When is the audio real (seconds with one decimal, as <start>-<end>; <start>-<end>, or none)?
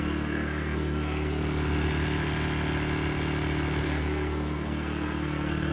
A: 1.4-3.8